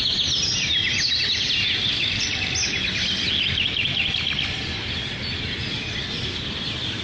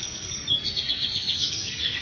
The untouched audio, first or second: first